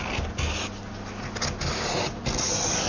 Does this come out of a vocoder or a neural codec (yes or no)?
no